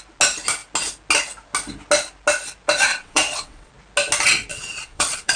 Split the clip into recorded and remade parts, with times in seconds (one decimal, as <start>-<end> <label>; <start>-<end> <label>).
0.0-2.9 recorded; 2.9-3.7 remade; 3.7-4.5 recorded; 4.5-5.4 remade